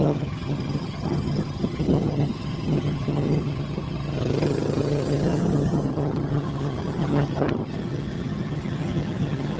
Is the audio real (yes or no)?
no